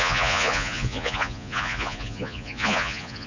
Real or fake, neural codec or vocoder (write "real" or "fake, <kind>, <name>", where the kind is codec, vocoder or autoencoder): fake, vocoder, Vocos